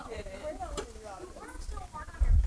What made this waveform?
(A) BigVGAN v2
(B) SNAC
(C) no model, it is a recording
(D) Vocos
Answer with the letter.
C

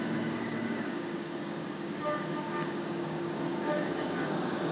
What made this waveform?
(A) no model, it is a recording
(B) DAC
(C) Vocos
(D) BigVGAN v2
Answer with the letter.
B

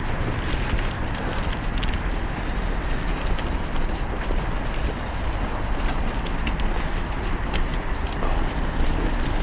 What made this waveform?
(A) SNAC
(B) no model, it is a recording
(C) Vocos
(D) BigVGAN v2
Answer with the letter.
B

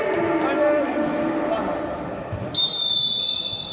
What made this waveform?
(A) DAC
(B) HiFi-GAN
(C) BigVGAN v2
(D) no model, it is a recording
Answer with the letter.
D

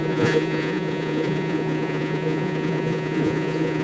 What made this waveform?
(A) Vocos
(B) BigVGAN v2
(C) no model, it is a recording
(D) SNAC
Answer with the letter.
A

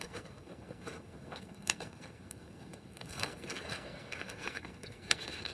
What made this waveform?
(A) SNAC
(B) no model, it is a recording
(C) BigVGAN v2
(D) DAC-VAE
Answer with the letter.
A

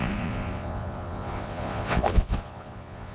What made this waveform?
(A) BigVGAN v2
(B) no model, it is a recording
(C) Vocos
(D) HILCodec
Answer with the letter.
C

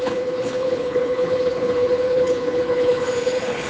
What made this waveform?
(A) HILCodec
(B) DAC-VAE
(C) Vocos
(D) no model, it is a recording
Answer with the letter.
A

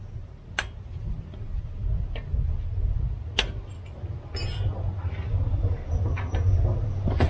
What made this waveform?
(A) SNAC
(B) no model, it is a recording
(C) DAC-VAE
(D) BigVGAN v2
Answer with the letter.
B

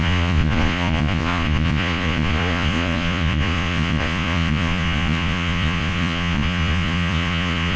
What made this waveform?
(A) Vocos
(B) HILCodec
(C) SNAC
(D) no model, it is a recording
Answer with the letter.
A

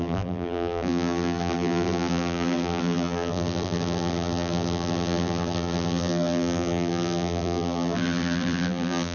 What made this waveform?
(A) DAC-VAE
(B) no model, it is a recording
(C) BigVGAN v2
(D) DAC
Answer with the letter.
C